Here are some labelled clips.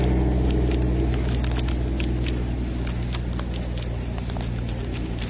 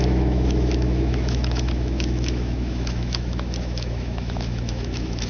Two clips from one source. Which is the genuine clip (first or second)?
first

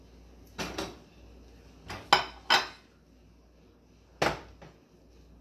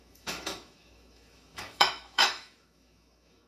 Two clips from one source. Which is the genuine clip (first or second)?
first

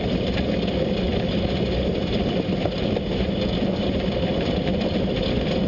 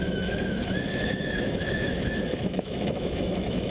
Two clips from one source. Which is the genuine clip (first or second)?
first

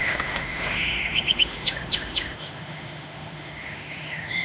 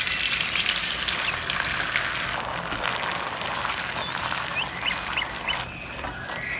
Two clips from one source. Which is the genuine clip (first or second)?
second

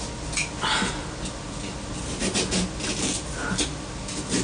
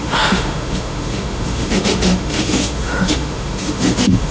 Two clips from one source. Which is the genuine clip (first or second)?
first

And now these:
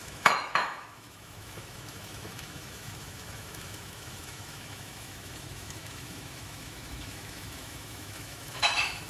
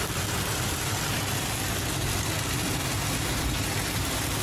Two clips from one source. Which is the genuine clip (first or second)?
second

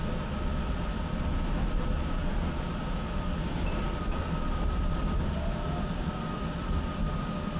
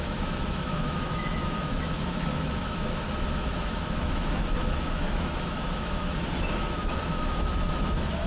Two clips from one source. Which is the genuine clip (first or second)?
first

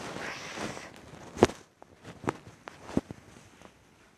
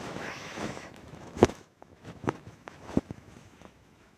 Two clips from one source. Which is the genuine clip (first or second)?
first